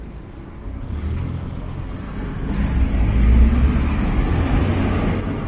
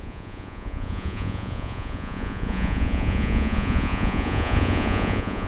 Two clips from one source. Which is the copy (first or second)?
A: second